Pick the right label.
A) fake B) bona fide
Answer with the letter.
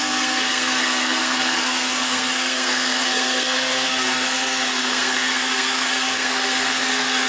A